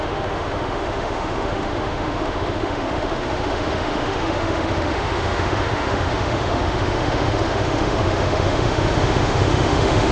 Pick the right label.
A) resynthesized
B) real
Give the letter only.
A